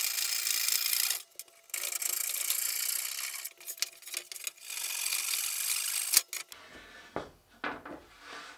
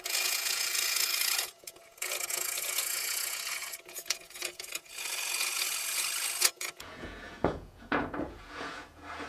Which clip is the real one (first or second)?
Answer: first